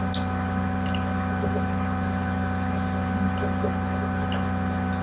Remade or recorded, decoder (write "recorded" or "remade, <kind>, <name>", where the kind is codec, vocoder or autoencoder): recorded